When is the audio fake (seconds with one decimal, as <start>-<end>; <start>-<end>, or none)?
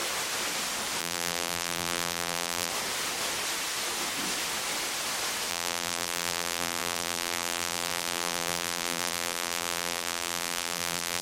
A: 1.0-2.7; 5.5-11.2